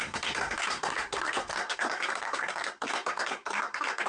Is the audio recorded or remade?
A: remade